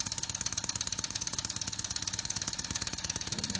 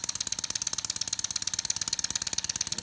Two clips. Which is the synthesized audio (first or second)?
first